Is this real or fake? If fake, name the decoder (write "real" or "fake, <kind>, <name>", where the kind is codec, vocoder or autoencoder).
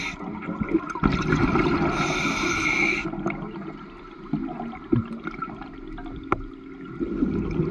real